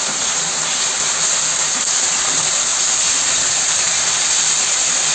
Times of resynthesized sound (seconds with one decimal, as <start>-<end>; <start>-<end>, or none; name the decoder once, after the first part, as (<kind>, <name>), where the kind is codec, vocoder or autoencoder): 2.7-4.1 (vocoder, BigVGAN v2)